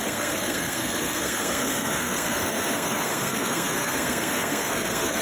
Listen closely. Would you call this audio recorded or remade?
remade